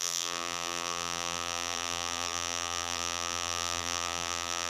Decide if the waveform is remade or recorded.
remade